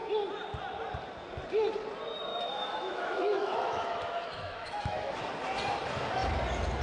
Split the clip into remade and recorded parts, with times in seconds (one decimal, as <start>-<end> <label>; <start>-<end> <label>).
0.0-2.3 recorded; 2.3-5.2 remade; 5.2-6.8 recorded